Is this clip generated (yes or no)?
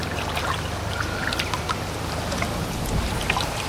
no